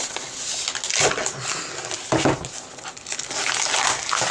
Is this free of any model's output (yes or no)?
yes